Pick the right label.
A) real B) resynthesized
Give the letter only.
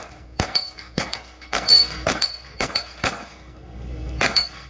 B